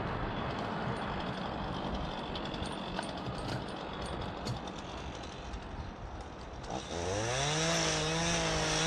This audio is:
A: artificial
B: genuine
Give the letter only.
B